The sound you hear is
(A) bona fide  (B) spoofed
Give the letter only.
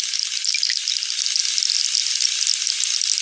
A